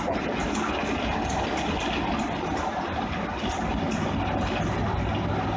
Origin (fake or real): real